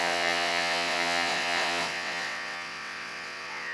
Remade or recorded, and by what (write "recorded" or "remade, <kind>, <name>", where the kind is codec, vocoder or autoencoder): remade, vocoder, WaveNeXt